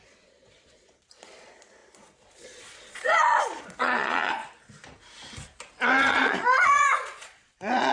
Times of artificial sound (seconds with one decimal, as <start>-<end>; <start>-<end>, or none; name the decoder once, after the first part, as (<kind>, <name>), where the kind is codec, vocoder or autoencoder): 0.0-4.4 (vocoder, Vocos); 5.9-7.9